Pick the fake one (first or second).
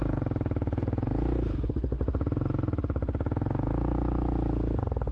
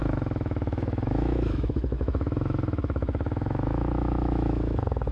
second